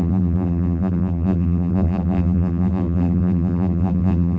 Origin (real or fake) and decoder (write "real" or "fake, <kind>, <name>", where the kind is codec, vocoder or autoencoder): fake, vocoder, BigVGAN v2